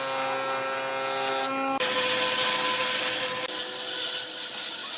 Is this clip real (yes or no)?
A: yes